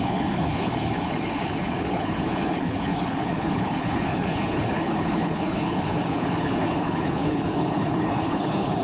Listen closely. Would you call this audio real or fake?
fake